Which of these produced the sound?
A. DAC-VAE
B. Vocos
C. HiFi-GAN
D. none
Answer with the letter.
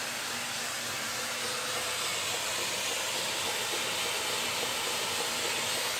D